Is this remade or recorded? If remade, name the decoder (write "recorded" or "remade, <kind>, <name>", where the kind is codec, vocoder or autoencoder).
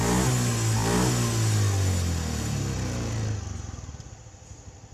recorded